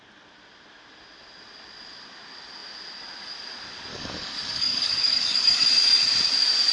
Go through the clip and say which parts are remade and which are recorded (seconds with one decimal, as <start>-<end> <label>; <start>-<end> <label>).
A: 0.0-3.9 recorded; 3.9-5.7 remade; 5.7-6.7 recorded